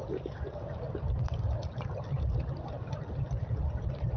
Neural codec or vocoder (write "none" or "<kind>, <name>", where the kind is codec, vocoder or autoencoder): none